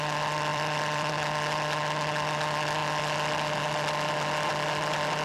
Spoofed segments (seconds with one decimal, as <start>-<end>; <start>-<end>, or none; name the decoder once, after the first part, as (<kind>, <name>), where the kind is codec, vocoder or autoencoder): 0.5-1.1 (vocoder, BigVGAN v2)